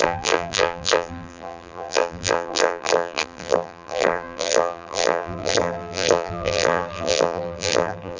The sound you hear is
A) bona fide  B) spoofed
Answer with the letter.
B